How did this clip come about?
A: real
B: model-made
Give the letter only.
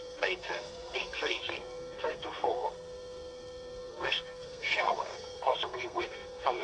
B